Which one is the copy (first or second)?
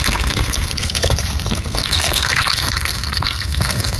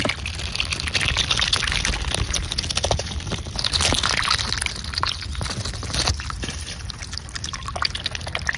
first